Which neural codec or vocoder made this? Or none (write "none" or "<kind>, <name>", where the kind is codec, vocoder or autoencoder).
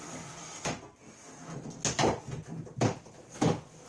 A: none